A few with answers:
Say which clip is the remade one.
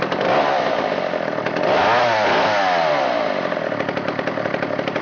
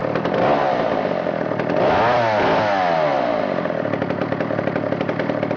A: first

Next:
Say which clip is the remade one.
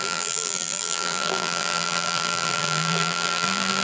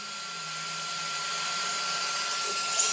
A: first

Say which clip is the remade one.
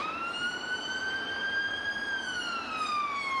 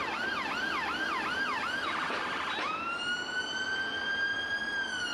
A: first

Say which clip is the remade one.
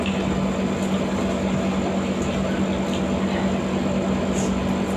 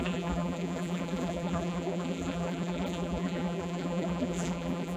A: second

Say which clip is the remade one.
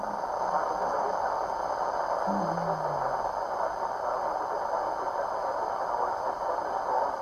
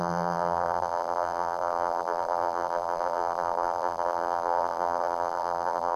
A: second